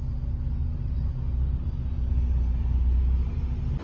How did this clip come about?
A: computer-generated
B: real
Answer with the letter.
B